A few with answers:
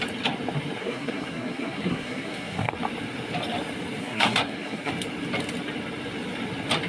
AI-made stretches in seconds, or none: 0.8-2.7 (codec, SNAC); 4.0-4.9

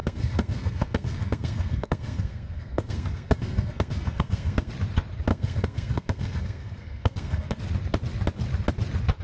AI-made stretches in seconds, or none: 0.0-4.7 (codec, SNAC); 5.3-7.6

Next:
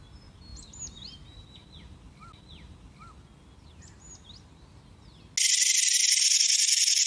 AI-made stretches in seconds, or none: none

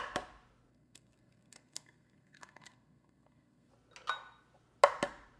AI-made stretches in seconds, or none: 0.7-3.7 (codec, SNAC)